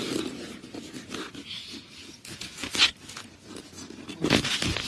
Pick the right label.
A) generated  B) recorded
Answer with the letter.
B